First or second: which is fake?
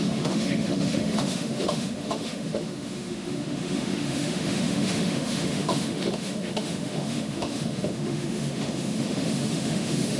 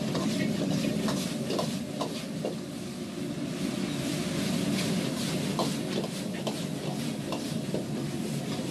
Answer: first